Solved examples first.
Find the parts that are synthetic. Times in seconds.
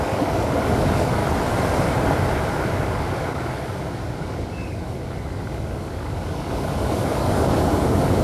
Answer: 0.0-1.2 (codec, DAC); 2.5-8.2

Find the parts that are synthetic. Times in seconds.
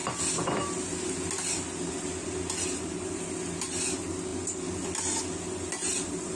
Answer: none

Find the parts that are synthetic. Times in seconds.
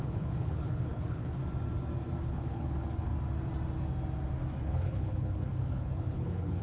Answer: 0.0-1.4 (codec, HILCodec); 2.2-3.1; 4.6-6.6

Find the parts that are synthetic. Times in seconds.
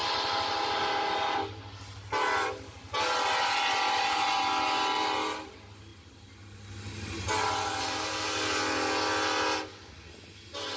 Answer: none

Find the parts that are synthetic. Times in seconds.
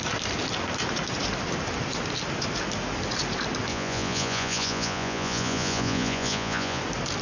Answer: 3.7-6.8 (vocoder, Vocos)